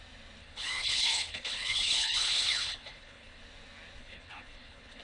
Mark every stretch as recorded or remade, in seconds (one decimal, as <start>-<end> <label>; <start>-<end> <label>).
0.0-0.4 recorded; 0.4-3.4 remade; 3.4-4.0 recorded; 4.0-5.0 remade